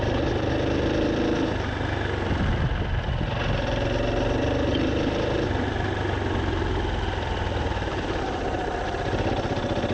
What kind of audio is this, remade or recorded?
recorded